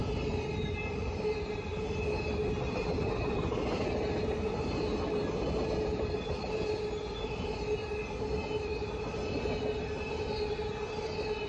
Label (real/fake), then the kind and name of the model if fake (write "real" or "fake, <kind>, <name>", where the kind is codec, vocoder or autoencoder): real